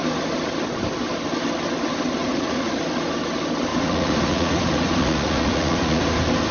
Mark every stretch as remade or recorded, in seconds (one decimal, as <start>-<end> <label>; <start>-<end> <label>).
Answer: 0.0-2.2 recorded; 2.2-2.8 remade; 2.8-3.7 recorded; 3.7-6.0 remade; 6.0-6.5 recorded